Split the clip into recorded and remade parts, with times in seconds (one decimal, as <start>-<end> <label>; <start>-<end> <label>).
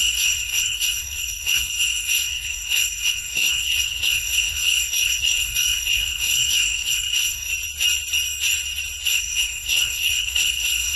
0.0-7.5 remade; 7.5-9.1 recorded; 9.1-11.0 remade